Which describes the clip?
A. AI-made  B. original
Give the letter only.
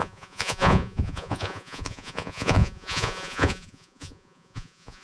A